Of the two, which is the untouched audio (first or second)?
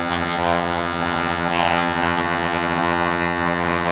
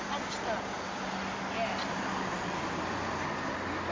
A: second